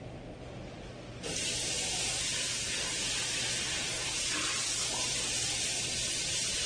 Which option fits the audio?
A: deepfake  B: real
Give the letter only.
B